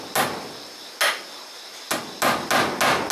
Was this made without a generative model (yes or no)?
yes